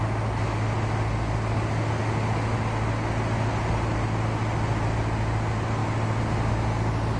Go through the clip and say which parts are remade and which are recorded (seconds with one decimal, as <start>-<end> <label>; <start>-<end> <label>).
0.0-7.2 recorded

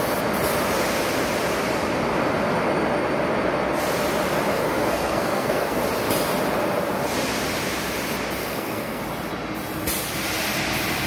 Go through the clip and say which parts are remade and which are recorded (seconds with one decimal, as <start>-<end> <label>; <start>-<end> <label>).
0.0-4.5 recorded; 4.5-5.8 remade; 5.8-8.4 recorded; 8.4-9.0 remade; 9.0-11.1 recorded

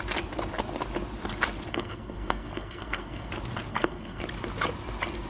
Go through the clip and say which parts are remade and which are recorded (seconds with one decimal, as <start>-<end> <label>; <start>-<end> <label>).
0.0-1.7 recorded; 1.7-3.3 remade; 3.3-3.7 recorded; 3.7-4.2 remade; 4.2-5.3 recorded

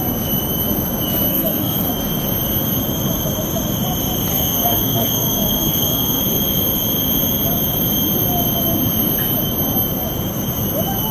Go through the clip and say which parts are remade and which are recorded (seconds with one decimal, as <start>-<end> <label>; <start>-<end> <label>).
0.0-1.3 recorded; 1.3-1.9 remade; 1.9-4.3 recorded; 4.3-6.2 remade; 6.2-11.1 recorded

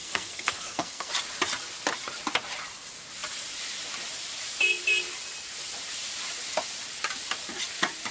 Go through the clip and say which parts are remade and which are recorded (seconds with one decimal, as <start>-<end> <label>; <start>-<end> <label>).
0.0-1.1 remade; 1.1-8.1 recorded

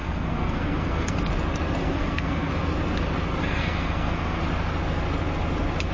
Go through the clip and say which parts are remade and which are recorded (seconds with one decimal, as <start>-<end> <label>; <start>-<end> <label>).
0.0-1.3 remade; 1.3-1.8 recorded; 1.8-2.5 remade; 2.5-3.4 recorded; 3.4-4.4 remade; 4.4-5.9 recorded

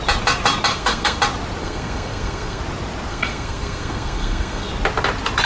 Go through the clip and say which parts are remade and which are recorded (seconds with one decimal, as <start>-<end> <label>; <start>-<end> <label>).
0.0-0.7 recorded; 0.7-1.2 remade; 1.2-1.6 recorded; 1.6-2.6 remade; 2.6-3.1 recorded; 3.1-4.7 remade; 4.7-5.5 recorded